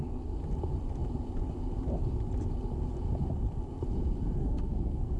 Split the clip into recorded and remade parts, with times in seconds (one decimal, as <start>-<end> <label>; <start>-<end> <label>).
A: 0.0-4.4 recorded; 4.4-5.2 remade